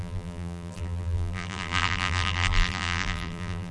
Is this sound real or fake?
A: fake